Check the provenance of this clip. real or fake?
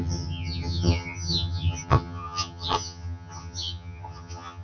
fake